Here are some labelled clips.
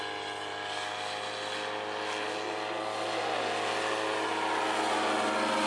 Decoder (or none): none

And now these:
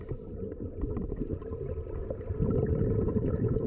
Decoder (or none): vocoder, BigVGAN v2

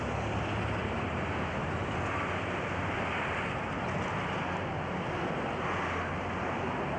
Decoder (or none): none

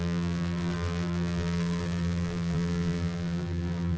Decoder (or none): vocoder, BigVGAN v2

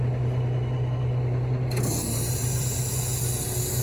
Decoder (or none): none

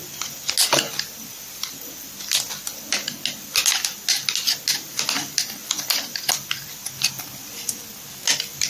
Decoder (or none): none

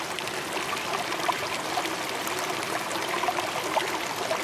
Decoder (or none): none